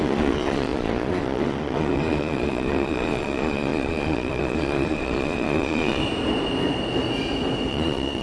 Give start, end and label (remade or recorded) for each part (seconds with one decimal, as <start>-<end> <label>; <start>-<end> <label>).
0.0-6.0 remade; 6.0-7.7 recorded; 7.7-8.2 remade